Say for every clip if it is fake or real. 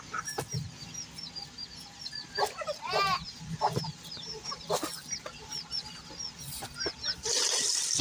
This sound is real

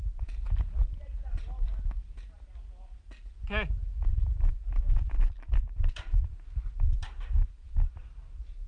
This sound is real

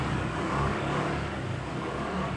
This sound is fake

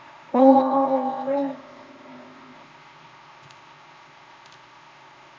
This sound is fake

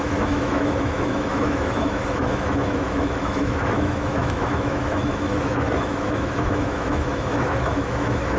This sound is fake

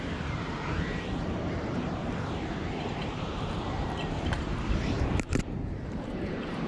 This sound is fake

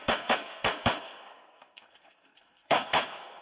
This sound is fake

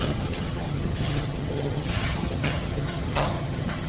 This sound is fake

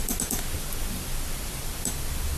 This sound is real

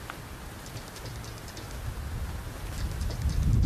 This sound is fake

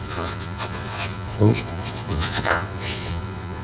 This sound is fake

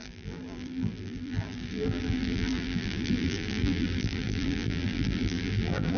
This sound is fake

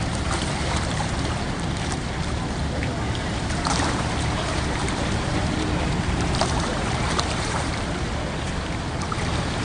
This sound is fake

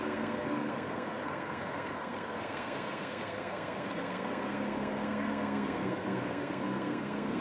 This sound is fake